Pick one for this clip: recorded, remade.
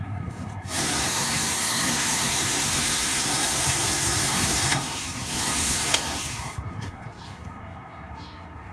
remade